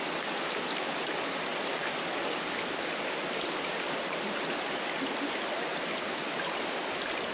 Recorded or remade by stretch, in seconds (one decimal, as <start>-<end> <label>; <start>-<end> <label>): 0.0-7.3 recorded